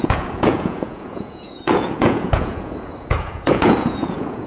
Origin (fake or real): fake